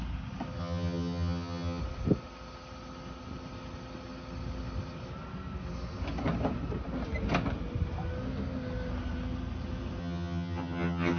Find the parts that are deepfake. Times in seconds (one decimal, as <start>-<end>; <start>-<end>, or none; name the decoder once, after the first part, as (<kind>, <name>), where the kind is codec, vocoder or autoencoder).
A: 0.6-1.8 (vocoder, HiFi-GAN); 10.0-11.2